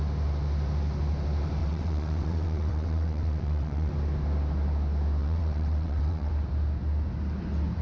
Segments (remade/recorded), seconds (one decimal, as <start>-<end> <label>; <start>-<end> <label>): 0.0-1.6 recorded; 1.6-3.9 remade; 3.9-5.2 recorded; 5.2-6.3 remade; 6.3-7.8 recorded

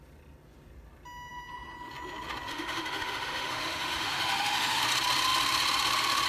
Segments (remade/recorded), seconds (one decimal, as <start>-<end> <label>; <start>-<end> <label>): 0.0-2.5 recorded; 2.5-4.8 remade; 4.8-6.3 recorded

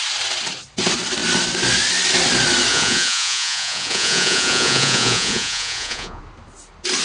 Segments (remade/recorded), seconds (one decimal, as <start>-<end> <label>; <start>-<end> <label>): 0.0-2.7 recorded; 2.7-6.2 remade; 6.2-7.0 recorded